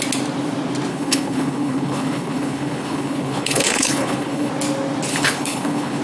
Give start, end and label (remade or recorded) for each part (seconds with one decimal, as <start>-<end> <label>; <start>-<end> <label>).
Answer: 0.0-0.9 recorded; 0.9-4.5 remade; 4.5-5.1 recorded; 5.1-6.0 remade